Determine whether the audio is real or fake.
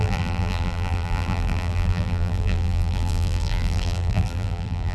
fake